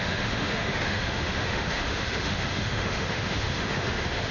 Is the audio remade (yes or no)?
yes